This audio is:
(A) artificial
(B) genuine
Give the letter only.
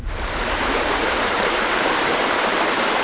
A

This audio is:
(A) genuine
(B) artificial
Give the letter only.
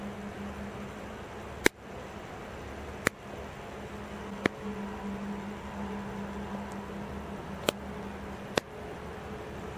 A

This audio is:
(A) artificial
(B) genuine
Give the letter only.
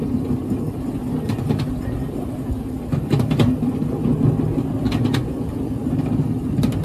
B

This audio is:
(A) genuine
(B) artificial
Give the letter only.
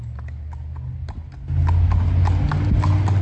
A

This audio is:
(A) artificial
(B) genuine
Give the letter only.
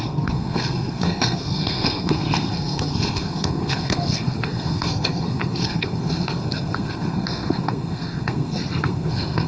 A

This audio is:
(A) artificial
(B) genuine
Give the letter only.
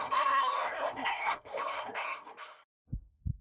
A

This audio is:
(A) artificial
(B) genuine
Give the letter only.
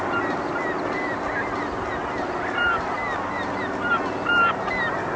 B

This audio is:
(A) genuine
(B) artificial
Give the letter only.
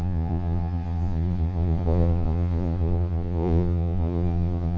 B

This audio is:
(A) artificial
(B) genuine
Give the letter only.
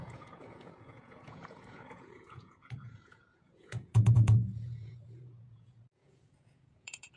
A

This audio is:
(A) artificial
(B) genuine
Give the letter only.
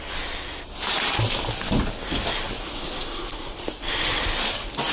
B